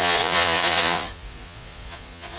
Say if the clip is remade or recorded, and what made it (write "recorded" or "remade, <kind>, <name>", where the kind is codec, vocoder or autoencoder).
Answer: remade, vocoder, Vocos